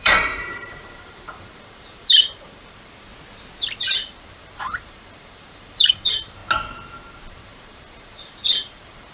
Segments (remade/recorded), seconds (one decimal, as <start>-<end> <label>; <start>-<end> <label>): 0.0-3.1 remade; 3.1-3.8 recorded; 3.8-6.4 remade; 6.4-7.3 recorded; 7.3-9.1 remade